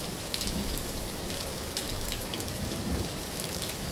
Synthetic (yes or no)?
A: yes